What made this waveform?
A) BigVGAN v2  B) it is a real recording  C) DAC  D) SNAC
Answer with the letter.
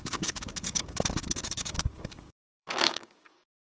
C